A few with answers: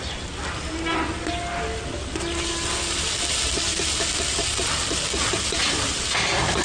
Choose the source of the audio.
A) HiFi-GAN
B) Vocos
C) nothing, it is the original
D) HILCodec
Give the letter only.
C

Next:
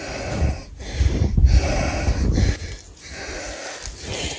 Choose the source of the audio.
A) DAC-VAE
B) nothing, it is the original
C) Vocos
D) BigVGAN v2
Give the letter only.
B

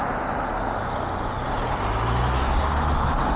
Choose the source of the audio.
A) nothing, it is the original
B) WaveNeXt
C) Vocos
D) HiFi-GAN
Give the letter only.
A